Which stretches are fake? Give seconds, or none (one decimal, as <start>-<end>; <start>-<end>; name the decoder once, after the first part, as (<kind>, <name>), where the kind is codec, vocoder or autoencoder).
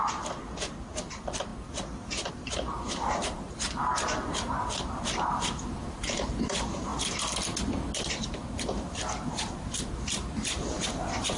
0.0-1.5 (vocoder, BigVGAN v2); 2.3-6.9; 8.2-11.4